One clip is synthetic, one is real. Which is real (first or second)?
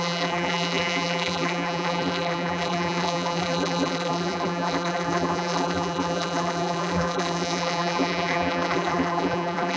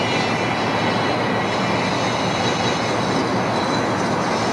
second